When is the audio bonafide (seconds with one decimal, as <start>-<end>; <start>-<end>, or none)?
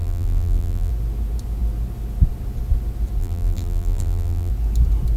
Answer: 0.9-3.2; 4.5-5.2